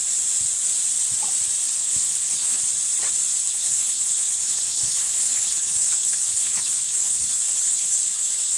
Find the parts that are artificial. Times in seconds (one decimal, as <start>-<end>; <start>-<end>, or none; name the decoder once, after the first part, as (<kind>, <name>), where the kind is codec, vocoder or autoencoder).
1.8-2.6 (codec, HILCodec); 3.5-8.6